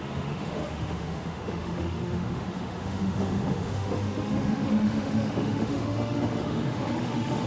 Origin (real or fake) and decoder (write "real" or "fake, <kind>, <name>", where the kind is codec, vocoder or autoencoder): fake, autoencoder, DAC-VAE